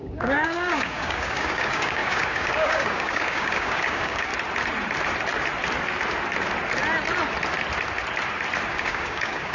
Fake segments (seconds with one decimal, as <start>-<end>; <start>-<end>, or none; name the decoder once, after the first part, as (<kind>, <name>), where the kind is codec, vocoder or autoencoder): 0.0-4.3 (codec, DAC); 8.7-9.5